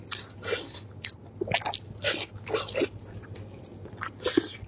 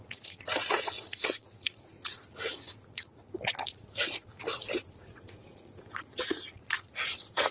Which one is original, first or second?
first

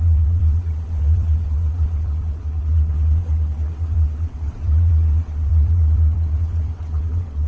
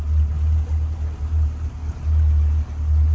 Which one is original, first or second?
second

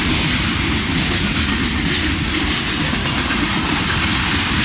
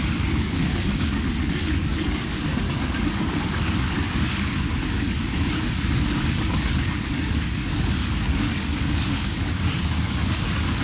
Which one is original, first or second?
first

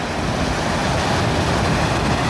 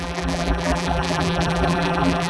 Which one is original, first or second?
first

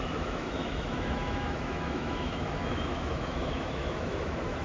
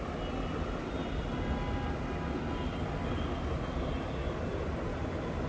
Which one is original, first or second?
second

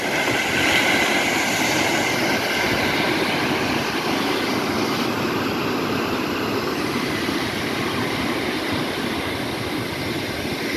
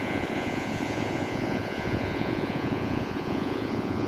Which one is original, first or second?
first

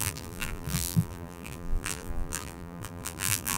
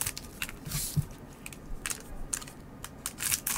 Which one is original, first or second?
second